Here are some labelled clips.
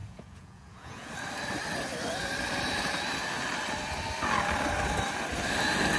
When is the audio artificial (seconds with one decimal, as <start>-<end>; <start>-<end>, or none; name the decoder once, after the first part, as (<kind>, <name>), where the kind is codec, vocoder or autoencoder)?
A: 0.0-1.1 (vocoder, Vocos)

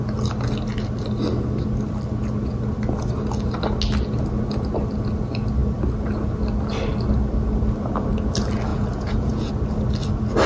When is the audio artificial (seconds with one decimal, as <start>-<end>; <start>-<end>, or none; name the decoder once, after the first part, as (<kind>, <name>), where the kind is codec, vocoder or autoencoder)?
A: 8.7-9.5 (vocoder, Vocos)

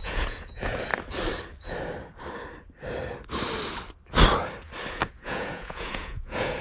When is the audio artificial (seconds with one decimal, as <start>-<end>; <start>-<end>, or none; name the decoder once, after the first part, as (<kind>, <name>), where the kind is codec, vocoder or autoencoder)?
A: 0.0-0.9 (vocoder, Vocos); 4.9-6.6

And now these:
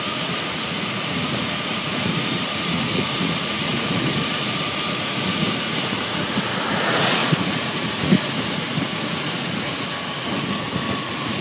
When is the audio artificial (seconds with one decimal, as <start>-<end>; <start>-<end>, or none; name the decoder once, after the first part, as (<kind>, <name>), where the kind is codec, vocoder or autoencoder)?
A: 0.0-11.4 (vocoder, Vocos)

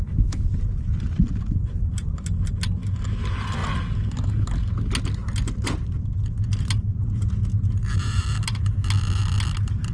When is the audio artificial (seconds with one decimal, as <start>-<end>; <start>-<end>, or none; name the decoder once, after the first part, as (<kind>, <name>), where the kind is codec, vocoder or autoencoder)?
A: none

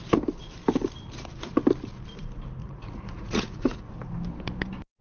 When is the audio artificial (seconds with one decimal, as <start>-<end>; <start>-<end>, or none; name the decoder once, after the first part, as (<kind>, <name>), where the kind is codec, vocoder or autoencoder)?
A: 2.6-3.9 (vocoder, Vocos)